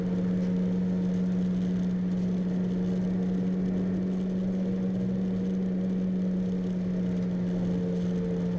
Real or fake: real